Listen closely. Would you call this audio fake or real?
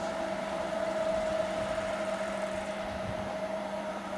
fake